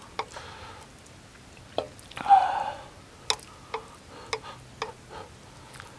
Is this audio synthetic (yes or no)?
no